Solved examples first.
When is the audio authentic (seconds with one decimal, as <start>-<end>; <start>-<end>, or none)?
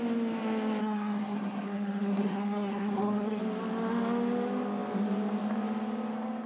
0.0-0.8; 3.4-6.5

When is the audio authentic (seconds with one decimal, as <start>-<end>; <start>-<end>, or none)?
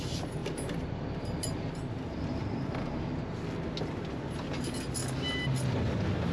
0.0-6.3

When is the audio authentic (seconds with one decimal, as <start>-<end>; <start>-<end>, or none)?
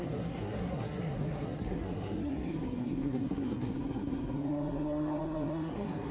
none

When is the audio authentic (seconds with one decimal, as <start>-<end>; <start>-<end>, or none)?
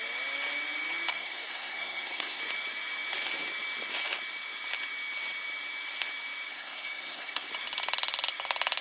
0.0-1.1; 2.4-6.5; 7.5-8.8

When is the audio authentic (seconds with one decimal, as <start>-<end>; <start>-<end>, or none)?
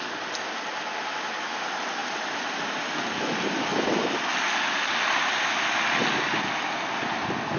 0.0-7.6